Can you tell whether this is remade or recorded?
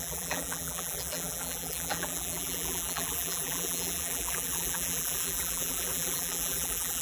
remade